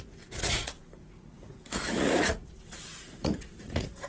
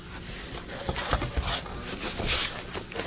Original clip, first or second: second